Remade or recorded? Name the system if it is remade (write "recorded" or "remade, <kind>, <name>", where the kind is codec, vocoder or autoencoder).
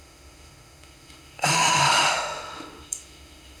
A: remade, autoencoder, DAC-VAE